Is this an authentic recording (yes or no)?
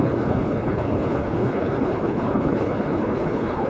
no